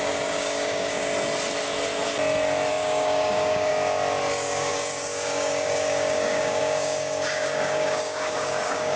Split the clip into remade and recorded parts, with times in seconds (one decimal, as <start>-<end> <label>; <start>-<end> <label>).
0.0-1.0 remade; 1.0-2.7 recorded; 2.7-3.7 remade; 3.7-4.3 recorded; 4.3-9.0 remade